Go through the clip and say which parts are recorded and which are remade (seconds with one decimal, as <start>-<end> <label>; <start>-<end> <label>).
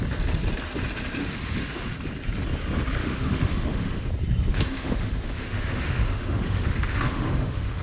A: 0.0-1.2 recorded; 1.2-1.9 remade; 1.9-3.0 recorded; 3.0-4.1 remade; 4.1-4.5 recorded; 4.5-7.8 remade